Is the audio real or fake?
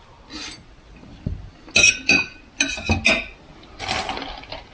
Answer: real